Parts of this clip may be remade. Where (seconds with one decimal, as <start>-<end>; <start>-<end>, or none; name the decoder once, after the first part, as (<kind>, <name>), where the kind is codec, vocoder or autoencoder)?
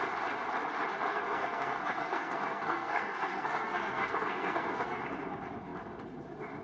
1.1-5.0 (codec, SNAC)